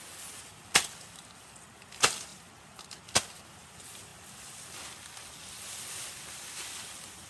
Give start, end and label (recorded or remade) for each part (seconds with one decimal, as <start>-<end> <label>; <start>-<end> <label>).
0.0-7.3 recorded